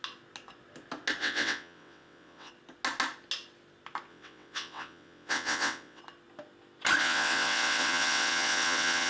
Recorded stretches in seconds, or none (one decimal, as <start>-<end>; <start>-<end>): 0.0-1.2; 2.5-4.1; 6.0-7.0